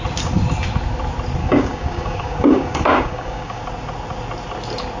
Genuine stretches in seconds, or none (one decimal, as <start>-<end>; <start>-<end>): 0.0-1.4; 3.6-5.0